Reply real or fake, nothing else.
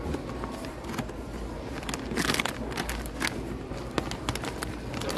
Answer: real